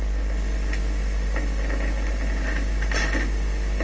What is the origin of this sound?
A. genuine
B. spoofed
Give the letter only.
A